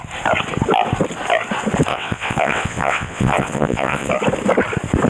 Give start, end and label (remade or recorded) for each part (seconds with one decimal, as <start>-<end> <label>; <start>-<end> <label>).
0.0-1.9 recorded; 1.9-4.1 remade; 4.1-5.1 recorded